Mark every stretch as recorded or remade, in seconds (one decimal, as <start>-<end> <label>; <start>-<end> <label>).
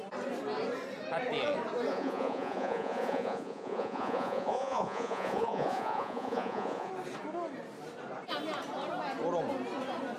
0.0-1.9 recorded; 1.9-6.9 remade; 6.9-10.2 recorded